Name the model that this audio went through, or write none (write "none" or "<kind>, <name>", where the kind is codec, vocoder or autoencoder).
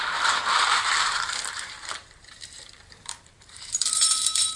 vocoder, BigVGAN v2